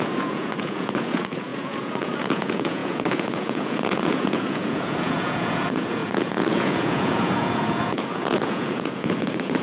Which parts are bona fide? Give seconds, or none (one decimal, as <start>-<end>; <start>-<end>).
none